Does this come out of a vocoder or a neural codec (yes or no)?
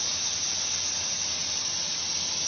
no